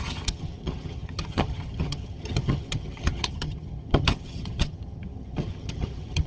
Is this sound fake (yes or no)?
yes